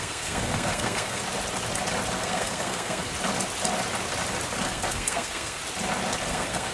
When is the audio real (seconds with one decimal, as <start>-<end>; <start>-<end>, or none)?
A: 1.2-2.2; 3.1-4.6; 5.6-6.3